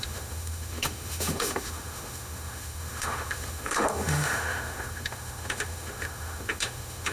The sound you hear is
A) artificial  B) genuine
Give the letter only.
A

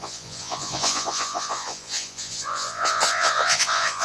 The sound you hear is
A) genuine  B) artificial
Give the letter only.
B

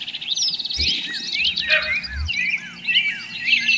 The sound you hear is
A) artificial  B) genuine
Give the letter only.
B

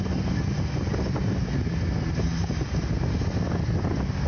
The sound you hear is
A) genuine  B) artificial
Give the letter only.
A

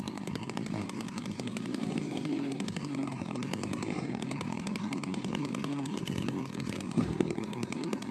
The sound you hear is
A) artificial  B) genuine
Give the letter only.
A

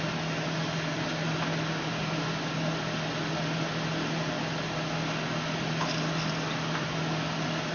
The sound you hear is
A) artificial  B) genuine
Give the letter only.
B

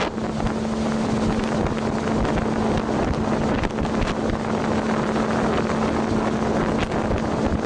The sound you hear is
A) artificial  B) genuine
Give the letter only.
B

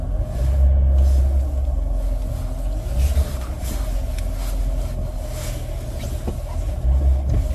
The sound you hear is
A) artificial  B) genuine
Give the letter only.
B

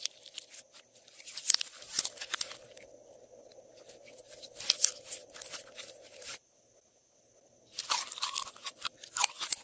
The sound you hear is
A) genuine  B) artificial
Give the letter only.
A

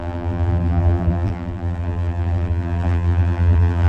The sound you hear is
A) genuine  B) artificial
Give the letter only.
B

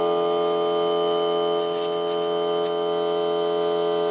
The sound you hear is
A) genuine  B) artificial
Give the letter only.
A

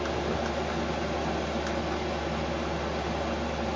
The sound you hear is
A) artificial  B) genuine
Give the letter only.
B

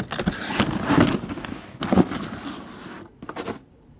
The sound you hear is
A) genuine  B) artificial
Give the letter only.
A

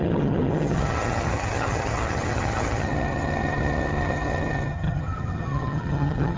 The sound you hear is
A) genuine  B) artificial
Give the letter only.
B